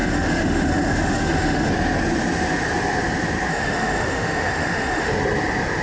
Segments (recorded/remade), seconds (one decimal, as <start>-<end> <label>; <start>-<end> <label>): 0.0-1.7 remade; 1.7-3.5 recorded; 3.5-5.1 remade; 5.1-5.8 recorded